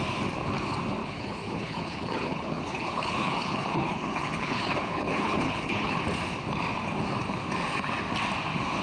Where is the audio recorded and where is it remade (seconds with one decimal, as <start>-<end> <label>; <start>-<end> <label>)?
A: 0.0-1.0 recorded; 1.0-6.0 remade; 6.0-8.8 recorded